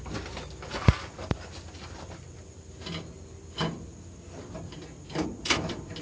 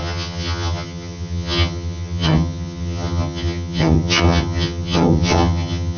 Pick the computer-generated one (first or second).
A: second